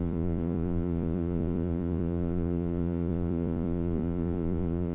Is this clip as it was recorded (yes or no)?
no